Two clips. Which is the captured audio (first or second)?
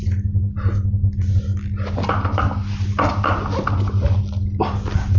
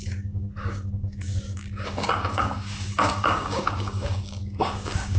first